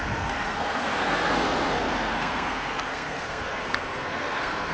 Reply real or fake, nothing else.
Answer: fake